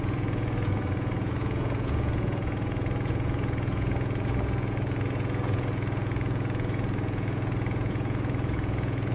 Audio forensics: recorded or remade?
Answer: remade